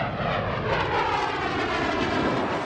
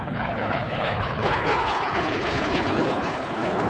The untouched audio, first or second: first